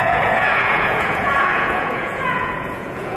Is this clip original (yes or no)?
no